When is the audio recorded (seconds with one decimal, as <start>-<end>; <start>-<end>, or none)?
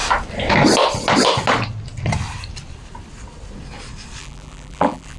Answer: 0.0-4.2